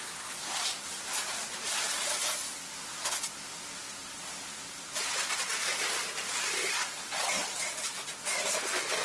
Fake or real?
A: real